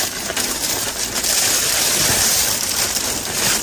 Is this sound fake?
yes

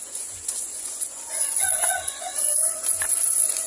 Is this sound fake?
yes